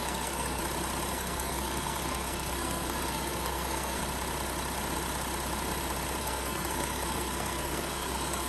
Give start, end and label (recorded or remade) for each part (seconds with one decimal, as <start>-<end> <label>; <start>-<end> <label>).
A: 0.0-0.6 remade; 0.6-1.1 recorded; 1.1-4.0 remade; 4.0-6.2 recorded; 6.2-8.5 remade